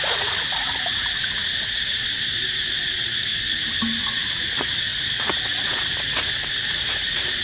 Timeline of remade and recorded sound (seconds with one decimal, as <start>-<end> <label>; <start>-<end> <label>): 0.0-3.3 remade; 3.3-4.0 recorded; 4.0-7.4 remade